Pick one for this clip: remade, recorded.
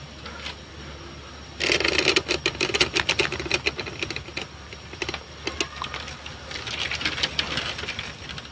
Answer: recorded